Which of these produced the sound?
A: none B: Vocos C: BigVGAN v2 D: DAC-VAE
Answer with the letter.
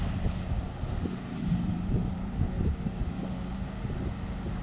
C